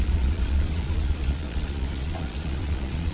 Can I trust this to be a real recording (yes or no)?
no